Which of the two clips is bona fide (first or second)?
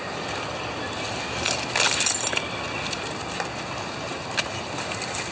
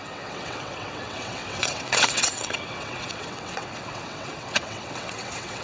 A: first